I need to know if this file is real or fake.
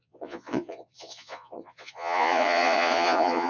fake